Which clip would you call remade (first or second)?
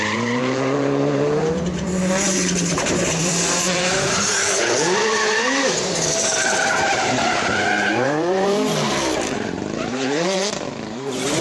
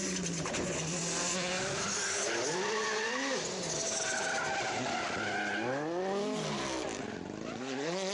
first